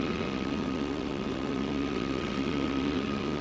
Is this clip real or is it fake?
fake